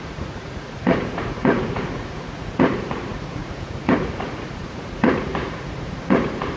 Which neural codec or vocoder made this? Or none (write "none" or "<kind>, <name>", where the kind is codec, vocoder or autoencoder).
vocoder, Vocos